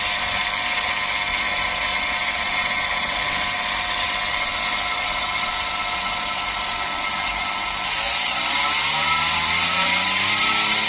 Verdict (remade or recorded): recorded